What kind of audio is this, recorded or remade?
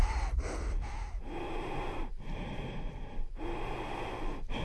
recorded